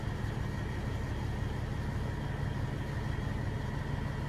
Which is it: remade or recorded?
recorded